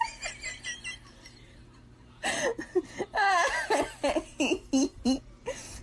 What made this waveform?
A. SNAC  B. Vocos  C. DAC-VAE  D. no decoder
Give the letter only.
D